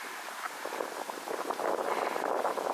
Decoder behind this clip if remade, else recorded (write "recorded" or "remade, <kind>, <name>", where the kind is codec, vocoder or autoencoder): recorded